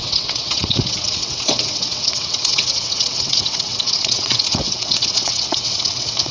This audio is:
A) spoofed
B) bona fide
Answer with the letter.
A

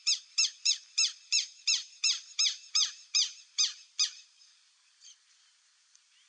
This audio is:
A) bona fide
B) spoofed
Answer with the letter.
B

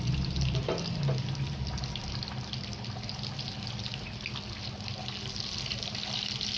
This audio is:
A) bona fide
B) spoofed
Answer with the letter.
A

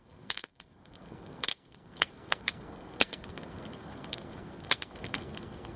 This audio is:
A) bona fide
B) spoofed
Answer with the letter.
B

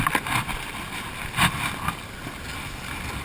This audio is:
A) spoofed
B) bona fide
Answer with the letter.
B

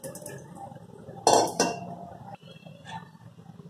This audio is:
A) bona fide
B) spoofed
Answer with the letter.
A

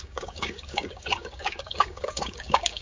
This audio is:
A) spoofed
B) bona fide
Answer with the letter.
A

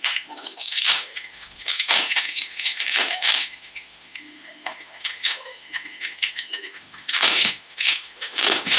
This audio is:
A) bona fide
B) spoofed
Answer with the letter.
B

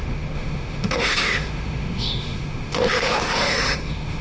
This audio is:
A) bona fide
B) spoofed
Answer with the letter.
B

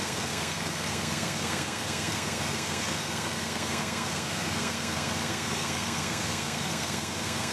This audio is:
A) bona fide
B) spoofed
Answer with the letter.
B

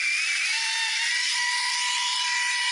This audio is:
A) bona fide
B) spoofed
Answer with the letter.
A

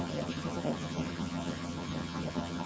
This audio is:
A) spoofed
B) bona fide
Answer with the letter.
A